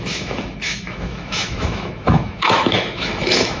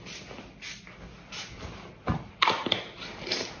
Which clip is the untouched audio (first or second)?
second